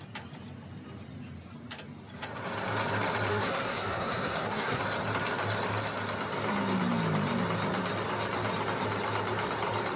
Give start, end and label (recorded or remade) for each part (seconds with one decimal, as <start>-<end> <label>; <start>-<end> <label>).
0.0-3.3 recorded; 3.3-4.8 remade; 4.8-10.0 recorded